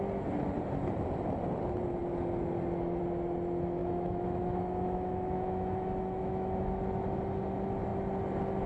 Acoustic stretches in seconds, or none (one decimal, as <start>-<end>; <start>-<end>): 0.0-3.8; 6.8-8.7